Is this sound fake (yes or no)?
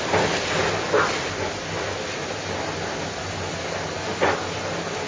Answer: no